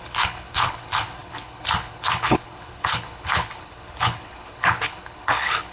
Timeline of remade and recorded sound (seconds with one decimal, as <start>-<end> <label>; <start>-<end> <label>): 0.0-5.7 remade